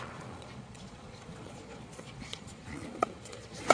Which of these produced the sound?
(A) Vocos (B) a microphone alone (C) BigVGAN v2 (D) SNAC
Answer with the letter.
A